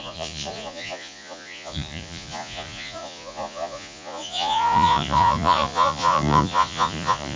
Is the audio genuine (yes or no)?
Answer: no